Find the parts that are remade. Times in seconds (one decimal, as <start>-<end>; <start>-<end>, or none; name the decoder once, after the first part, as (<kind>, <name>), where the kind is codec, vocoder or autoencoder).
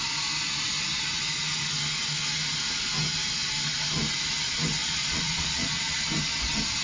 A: 4.8-6.1 (vocoder, Vocos)